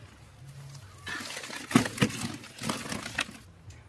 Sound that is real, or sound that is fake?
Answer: real